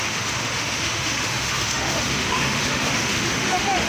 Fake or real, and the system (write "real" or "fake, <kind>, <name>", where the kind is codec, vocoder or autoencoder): fake, autoencoder, DAC-VAE